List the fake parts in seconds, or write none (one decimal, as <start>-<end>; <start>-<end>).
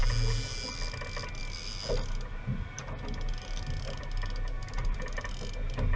none